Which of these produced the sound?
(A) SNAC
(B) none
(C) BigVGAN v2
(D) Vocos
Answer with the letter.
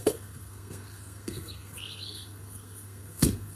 A